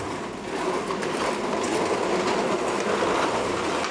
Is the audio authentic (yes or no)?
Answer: yes